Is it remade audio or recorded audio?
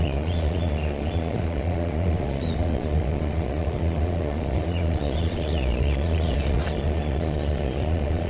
remade